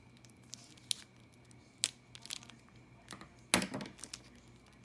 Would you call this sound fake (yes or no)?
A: no